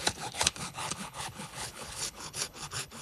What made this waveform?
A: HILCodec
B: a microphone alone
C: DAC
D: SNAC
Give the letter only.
A